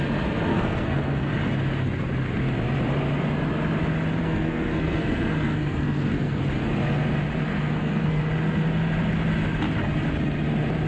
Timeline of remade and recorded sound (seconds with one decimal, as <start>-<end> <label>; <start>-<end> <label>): 0.0-0.5 recorded; 0.5-1.3 remade; 1.3-4.2 recorded; 4.2-6.4 remade; 6.4-7.5 recorded; 7.5-8.2 remade; 8.2-10.9 recorded